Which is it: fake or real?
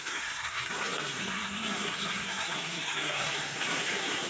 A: fake